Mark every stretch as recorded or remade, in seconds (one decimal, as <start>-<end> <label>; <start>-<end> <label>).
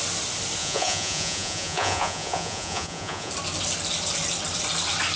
0.0-0.6 recorded; 0.6-3.3 remade; 3.3-5.2 recorded